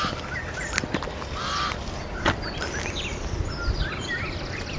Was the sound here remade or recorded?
recorded